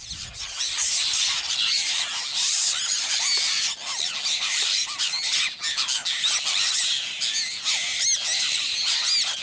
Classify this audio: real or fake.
real